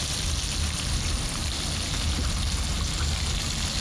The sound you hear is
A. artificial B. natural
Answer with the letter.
B